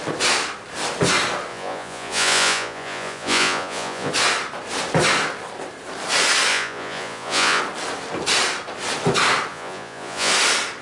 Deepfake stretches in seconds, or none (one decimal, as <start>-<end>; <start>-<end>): 1.5-4.1; 6.5-7.6; 9.5-10.3